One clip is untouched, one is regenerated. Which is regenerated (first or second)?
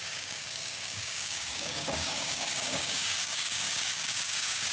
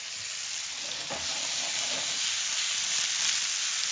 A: first